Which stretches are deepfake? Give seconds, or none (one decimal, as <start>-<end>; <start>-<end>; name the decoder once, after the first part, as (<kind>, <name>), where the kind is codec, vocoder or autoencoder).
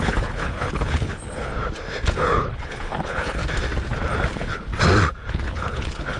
0.0-1.5 (codec, HILCodec); 2.1-3.4; 4.3-4.7; 5.3-6.2